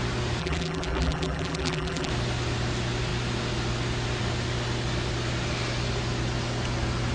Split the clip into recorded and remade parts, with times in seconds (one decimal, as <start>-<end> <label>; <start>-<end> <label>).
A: 0.0-0.4 recorded; 0.4-2.1 remade; 2.1-7.1 recorded